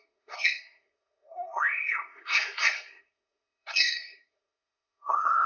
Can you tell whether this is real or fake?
fake